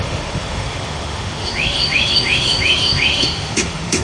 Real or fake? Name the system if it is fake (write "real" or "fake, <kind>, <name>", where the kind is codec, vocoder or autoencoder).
fake, autoencoder, DAC-VAE